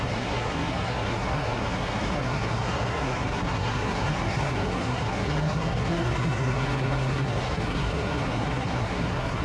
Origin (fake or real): fake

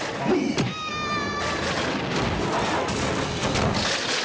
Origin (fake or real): real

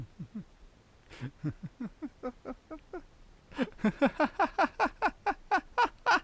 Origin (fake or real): real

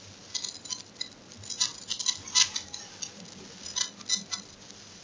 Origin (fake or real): real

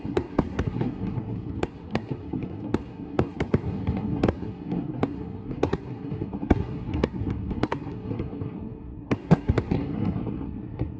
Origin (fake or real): fake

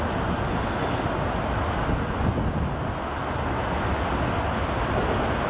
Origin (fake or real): real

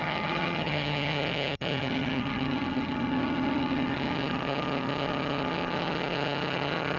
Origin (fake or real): fake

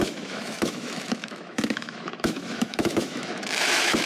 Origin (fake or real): fake